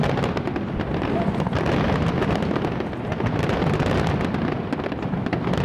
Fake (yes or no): no